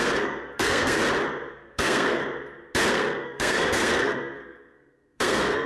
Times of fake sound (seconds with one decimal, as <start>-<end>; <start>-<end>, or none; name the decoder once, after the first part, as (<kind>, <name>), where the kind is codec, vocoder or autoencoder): 0.0-1.0 (codec, SNAC); 1.5-2.2; 2.9-5.7